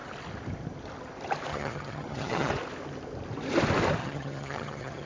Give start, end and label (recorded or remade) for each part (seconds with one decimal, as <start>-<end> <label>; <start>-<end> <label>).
0.0-1.5 recorded; 1.5-2.5 remade; 2.5-4.0 recorded; 4.0-5.1 remade